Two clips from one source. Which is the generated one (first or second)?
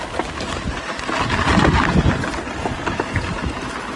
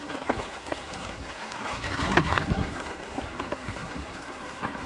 second